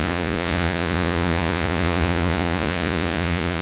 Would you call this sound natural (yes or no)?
no